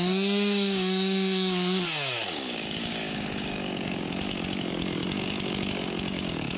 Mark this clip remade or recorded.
remade